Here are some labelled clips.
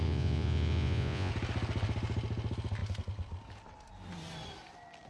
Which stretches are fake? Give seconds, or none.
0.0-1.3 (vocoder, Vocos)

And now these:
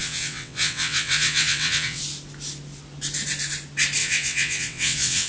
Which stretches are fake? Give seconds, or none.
0.0-2.0 (vocoder, WaveNeXt); 4.0-5.3